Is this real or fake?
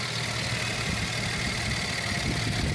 real